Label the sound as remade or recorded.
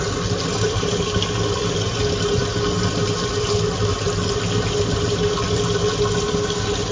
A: recorded